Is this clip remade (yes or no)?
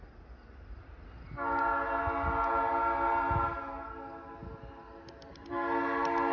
no